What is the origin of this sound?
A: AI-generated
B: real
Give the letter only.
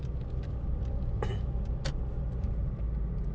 B